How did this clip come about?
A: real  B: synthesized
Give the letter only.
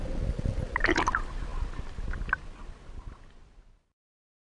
A